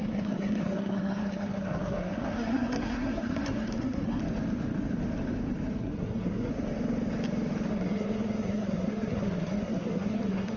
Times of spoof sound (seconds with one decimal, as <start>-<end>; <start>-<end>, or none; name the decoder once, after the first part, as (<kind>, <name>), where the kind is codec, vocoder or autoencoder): 0.0-4.2 (codec, SNAC); 5.8-6.5; 7.7-10.6